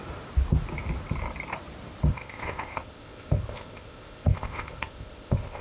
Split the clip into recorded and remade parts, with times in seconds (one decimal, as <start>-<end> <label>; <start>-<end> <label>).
0.0-2.1 recorded; 2.1-5.6 remade